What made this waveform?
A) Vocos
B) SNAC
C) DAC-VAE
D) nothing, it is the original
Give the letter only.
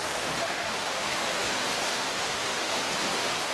C